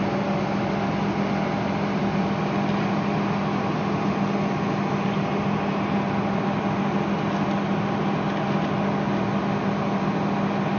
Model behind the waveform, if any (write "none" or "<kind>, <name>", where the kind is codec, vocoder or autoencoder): none